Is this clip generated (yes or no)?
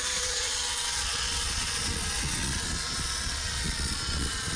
yes